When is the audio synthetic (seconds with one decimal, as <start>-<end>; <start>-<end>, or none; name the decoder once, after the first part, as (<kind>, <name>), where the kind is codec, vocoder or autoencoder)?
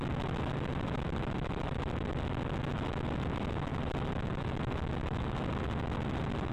none